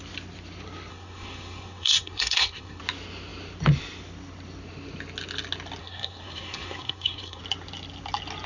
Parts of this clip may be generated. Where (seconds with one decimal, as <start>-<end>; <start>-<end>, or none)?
0.9-2.8; 5.8-7.4